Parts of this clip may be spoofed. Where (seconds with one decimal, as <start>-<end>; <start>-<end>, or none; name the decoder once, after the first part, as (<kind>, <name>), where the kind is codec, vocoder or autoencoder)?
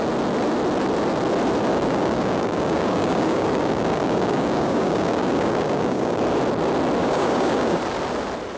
1.7-6.2 (codec, DAC); 7.0-7.8